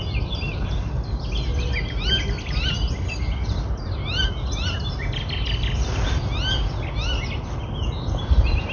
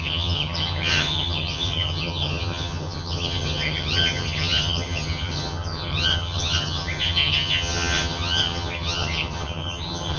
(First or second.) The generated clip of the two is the second